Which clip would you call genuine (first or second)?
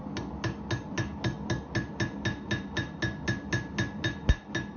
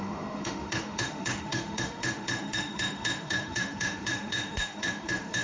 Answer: first